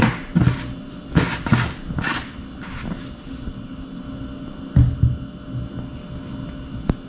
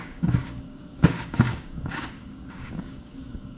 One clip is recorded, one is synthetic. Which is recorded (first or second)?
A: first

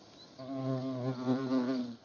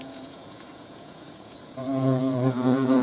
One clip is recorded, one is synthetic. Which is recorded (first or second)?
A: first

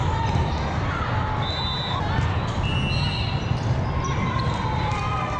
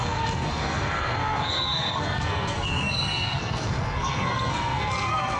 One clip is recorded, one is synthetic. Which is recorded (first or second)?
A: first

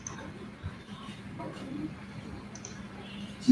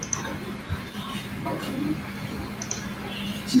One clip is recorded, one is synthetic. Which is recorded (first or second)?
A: second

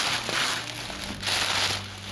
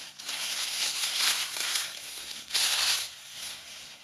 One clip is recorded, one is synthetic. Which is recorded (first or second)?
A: first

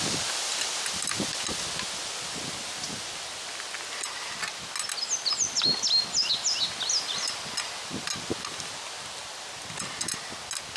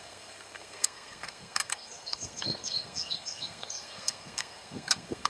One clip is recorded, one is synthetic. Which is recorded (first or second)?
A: first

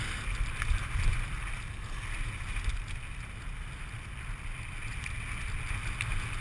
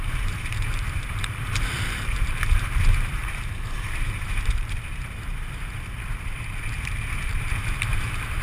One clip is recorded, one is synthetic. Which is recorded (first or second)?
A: first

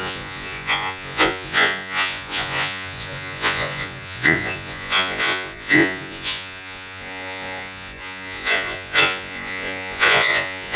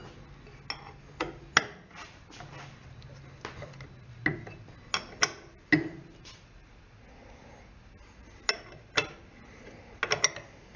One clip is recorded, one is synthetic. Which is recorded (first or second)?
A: second